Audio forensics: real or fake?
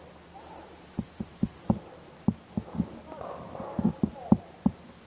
fake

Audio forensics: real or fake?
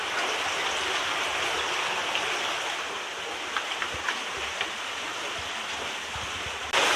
real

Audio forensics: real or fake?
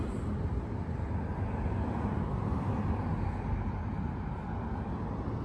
real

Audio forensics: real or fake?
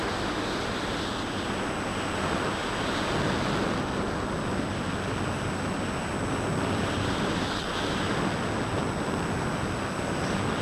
real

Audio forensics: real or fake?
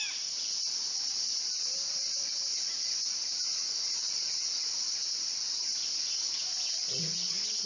real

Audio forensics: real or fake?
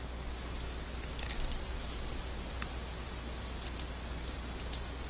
real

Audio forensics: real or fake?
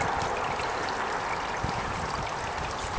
real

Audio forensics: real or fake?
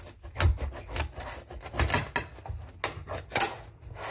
real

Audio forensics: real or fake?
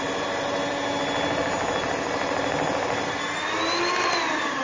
real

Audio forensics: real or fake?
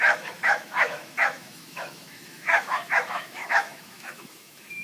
fake